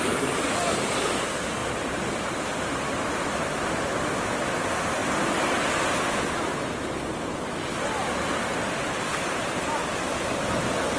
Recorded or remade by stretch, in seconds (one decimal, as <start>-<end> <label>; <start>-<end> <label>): 0.0-1.6 recorded; 1.6-3.9 remade; 3.9-6.5 recorded; 6.5-8.2 remade; 8.2-9.8 recorded; 9.8-10.4 remade; 10.4-11.0 recorded

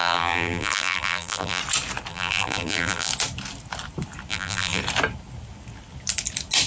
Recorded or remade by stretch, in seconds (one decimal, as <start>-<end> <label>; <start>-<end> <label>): 0.0-1.6 remade; 1.6-2.1 recorded; 2.1-3.1 remade; 3.1-4.3 recorded; 4.3-4.8 remade; 4.8-6.7 recorded

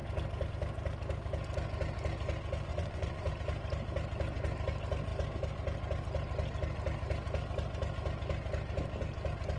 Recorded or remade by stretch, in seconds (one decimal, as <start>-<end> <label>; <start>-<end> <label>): 0.0-2.7 recorded; 2.7-3.3 remade; 3.3-9.6 recorded

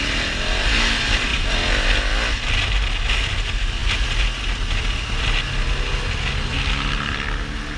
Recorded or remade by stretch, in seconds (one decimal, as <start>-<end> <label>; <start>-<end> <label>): 0.0-7.8 recorded

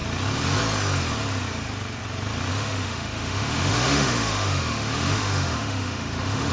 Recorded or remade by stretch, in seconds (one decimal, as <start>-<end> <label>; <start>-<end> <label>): 0.0-2.5 recorded; 2.5-6.5 remade

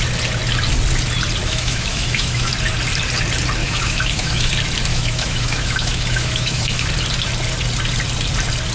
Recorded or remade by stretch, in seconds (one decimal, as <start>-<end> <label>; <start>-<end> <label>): 0.0-1.4 recorded; 1.4-2.5 remade; 2.5-3.6 recorded; 3.6-4.5 remade; 4.5-4.9 recorded; 4.9-6.9 remade; 6.9-8.7 recorded

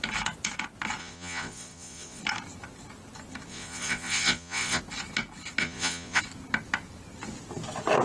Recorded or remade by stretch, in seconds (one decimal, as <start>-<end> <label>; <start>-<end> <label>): 0.0-1.0 recorded; 1.0-2.2 remade; 2.2-3.5 recorded; 3.5-4.8 remade; 4.8-5.6 recorded; 5.6-6.2 remade; 6.2-8.0 recorded

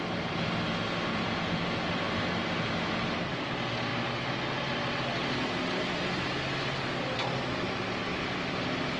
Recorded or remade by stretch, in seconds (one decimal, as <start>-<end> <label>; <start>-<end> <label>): 0.0-1.1 recorded; 1.1-1.6 remade; 1.6-9.0 recorded